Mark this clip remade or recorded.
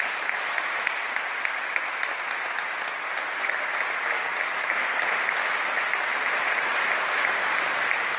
recorded